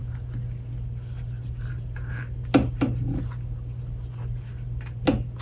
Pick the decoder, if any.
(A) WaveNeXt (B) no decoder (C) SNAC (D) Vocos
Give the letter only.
B